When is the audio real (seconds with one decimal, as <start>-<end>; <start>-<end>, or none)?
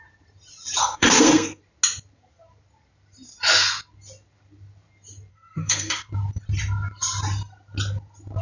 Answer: 0.0-0.8; 1.6-5.3; 6.1-8.4